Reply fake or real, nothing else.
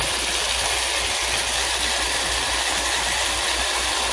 real